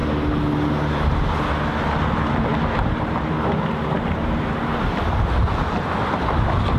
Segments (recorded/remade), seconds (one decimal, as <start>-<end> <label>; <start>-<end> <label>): 0.0-6.8 recorded